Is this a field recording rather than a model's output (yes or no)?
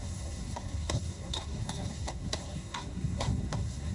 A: no